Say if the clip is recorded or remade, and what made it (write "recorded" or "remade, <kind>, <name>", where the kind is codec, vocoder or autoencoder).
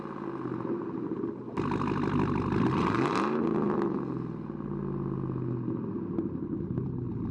recorded